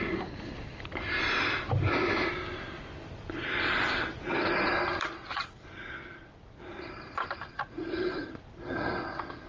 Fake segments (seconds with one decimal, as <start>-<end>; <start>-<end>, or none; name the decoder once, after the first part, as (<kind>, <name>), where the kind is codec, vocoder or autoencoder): 7.5-8.3 (vocoder, Vocos)

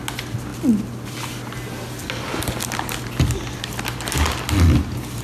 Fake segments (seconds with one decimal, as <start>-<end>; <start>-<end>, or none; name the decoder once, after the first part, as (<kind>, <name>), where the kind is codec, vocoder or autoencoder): none

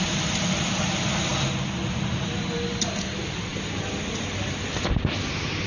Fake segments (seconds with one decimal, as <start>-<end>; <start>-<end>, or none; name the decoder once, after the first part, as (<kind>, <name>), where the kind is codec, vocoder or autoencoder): none

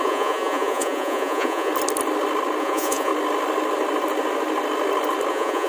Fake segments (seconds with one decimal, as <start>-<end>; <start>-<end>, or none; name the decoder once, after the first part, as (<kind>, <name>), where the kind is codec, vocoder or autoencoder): 0.0-1.7 (vocoder, Vocos); 2.6-3.1; 5.3-5.7

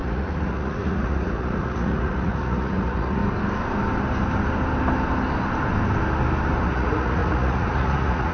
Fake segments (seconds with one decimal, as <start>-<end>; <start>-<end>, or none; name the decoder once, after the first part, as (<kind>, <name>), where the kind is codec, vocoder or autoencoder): 0.0-3.2 (vocoder, Vocos); 6.6-8.3

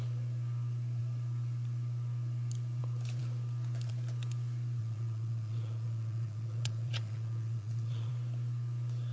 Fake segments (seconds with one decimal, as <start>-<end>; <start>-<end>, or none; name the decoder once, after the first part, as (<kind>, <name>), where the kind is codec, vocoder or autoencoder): 4.8-8.1 (vocoder, Vocos)

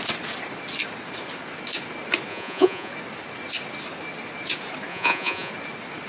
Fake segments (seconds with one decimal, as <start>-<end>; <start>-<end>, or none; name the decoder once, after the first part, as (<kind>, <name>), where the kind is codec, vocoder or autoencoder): 2.3-2.9 (vocoder, Vocos); 4.9-5.5

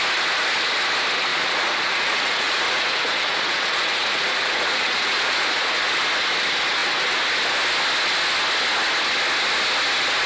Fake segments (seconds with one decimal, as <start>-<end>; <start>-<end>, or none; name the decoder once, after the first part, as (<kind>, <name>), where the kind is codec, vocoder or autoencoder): 1.3-5.9 (vocoder, Vocos)